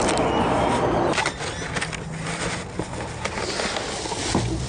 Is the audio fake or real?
real